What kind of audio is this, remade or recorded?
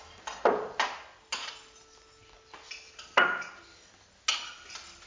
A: recorded